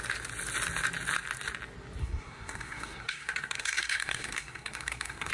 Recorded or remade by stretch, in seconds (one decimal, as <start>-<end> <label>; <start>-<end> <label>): 0.0-2.0 recorded; 2.0-5.3 remade